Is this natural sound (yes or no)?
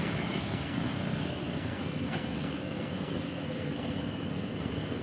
no